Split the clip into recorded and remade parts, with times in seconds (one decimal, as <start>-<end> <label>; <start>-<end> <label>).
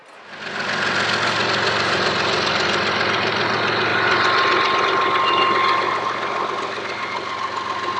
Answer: 0.0-8.0 recorded